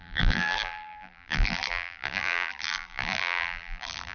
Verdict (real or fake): fake